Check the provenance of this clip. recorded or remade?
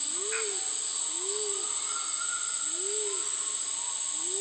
recorded